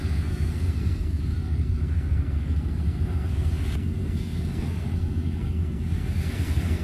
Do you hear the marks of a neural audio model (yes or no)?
yes